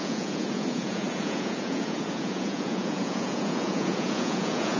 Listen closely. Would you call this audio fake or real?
fake